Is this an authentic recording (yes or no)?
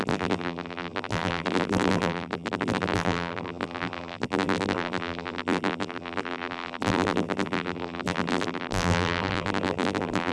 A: no